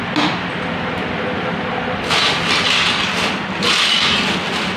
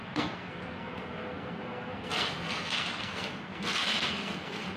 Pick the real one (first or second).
first